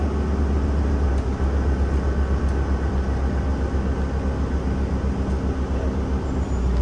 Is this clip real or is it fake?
real